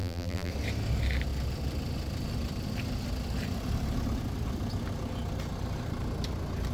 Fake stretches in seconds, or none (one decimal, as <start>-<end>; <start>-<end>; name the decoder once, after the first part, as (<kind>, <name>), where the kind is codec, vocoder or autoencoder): 0.0-0.5 (vocoder, BigVGAN v2)